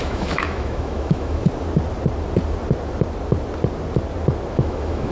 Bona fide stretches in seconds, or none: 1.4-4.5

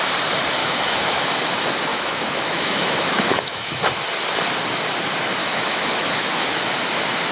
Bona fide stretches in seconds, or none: 0.0-0.6; 1.2-1.9; 3.8-5.4; 6.6-7.3

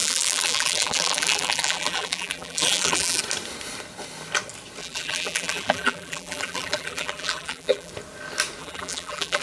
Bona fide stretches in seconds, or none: 3.2-4.8; 7.9-8.6

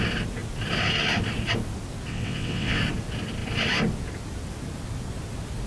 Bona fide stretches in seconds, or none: 0.0-2.1; 2.8-5.7

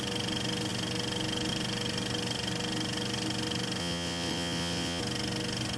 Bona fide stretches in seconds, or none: 0.0-3.8; 5.0-5.8

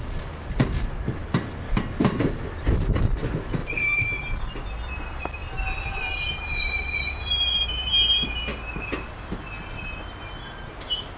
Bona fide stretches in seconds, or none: 0.0-1.2; 2.5-3.6; 4.5-5.4; 7.9-8.5; 9.5-11.2